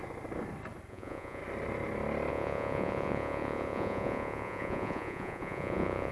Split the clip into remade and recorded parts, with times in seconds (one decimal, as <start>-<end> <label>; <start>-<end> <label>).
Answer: 0.0-0.9 recorded; 0.9-1.4 remade; 1.4-2.3 recorded; 2.3-6.1 remade